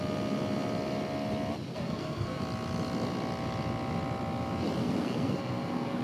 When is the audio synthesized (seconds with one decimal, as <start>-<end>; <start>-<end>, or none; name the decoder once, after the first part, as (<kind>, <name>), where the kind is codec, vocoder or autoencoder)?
1.7-2.4 (codec, SNAC); 4.8-6.0